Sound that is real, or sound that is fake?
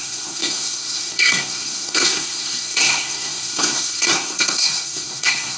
fake